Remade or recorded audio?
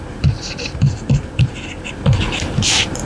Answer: remade